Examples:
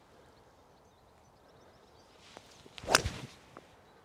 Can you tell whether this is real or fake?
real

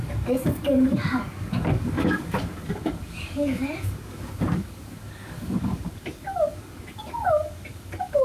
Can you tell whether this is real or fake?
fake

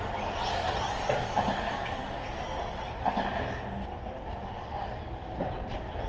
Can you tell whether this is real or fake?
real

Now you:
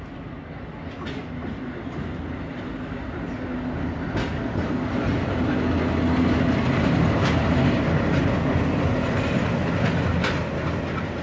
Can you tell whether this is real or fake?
real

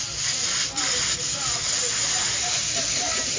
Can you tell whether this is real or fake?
real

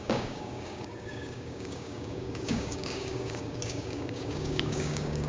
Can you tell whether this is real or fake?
fake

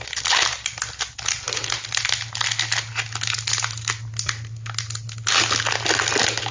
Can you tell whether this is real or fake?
real